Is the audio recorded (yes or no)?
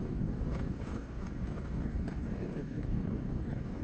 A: no